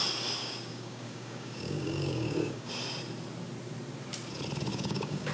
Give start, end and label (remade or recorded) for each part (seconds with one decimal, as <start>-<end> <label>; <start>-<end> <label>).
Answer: 0.0-0.4 recorded; 0.4-2.7 remade; 2.7-4.7 recorded; 4.7-5.3 remade